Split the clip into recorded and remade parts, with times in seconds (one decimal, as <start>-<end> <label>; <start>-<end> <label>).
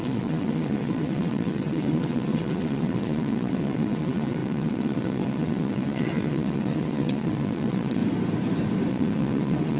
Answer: 0.0-8.0 remade; 8.0-8.9 recorded; 8.9-9.8 remade